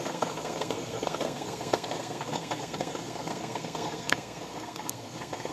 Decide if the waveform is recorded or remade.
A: remade